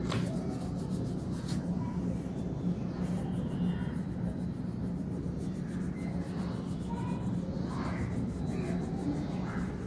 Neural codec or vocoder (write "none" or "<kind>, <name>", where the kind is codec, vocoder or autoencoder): none